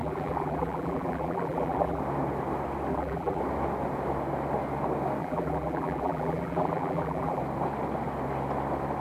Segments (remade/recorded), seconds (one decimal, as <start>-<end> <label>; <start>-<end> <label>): 0.0-2.0 remade; 2.0-2.9 recorded; 2.9-3.4 remade; 3.4-5.2 recorded; 5.2-7.4 remade; 7.4-9.0 recorded